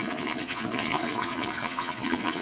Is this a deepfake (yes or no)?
yes